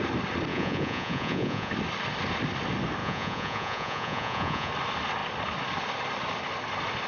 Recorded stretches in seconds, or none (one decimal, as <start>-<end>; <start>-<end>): 0.0-0.5; 1.7-3.0; 4.7-7.1